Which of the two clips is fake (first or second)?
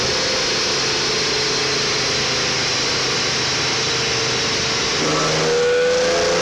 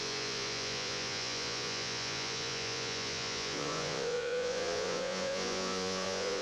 second